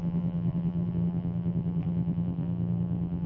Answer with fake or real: fake